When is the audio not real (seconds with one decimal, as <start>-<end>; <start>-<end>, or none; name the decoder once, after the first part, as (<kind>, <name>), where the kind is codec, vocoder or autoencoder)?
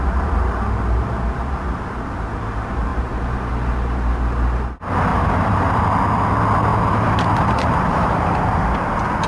2.9-3.5 (vocoder, BigVGAN v2); 5.1-5.8; 6.7-8.7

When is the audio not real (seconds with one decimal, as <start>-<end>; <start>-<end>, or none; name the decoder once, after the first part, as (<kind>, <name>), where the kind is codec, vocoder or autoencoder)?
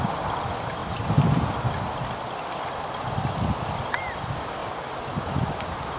4.6-5.2 (vocoder, BigVGAN v2)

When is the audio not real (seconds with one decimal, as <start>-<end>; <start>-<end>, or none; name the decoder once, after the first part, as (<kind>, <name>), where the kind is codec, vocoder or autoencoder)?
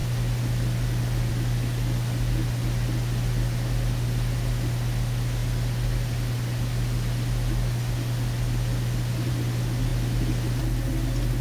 9.9-10.9 (vocoder, BigVGAN v2)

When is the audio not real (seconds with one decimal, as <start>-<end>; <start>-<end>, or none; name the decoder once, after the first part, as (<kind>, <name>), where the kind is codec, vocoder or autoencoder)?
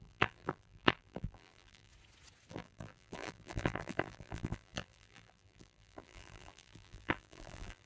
0.0-1.9 (vocoder, BigVGAN v2); 2.5-7.9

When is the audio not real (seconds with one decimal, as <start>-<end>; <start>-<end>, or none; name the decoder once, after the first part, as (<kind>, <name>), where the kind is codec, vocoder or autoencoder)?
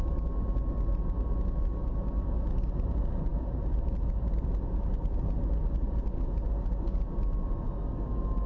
3.3-4.0 (vocoder, BigVGAN v2)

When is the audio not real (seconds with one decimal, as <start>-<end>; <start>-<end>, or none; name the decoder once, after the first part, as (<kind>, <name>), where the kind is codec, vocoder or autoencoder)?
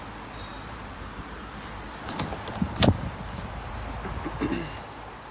0.5-3.7 (vocoder, BigVGAN v2)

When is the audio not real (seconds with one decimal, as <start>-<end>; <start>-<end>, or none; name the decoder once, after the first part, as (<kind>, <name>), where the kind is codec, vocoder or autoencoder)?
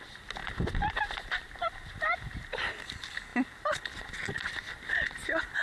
0.4-2.9 (vocoder, BigVGAN v2)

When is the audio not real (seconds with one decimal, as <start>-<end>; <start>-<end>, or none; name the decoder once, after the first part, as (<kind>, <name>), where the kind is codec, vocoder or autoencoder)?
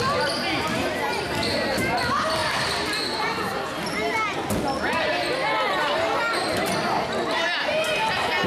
none